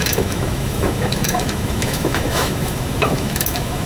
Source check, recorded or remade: remade